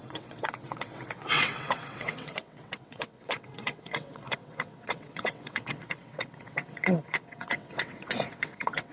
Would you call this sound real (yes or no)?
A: no